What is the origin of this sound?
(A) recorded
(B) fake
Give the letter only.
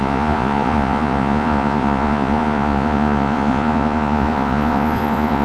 B